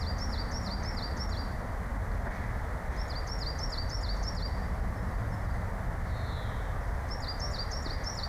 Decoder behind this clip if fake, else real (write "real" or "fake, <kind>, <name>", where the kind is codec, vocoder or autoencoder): real